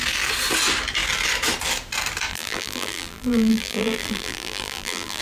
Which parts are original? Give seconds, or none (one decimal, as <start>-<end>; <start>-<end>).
0.0-2.3